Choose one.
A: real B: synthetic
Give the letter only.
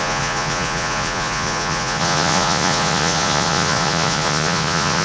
B